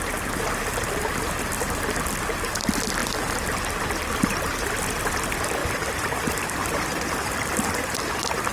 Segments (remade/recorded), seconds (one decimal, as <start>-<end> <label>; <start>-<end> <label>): 0.0-5.6 recorded; 5.6-8.0 remade; 8.0-8.5 recorded